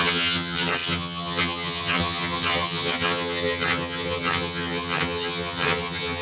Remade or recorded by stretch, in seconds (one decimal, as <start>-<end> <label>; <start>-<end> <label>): 0.0-6.2 remade